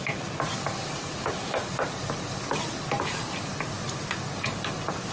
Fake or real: fake